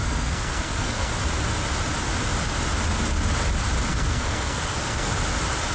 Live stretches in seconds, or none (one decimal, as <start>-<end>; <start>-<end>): 1.1-3.9; 5.1-5.7